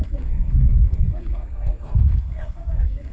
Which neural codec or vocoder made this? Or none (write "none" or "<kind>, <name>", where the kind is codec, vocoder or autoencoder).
codec, SNAC